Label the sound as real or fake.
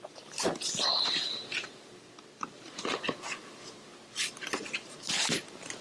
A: fake